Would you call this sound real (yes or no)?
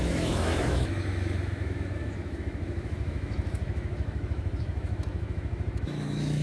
no